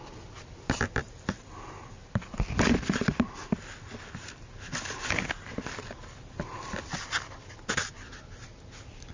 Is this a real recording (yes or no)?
yes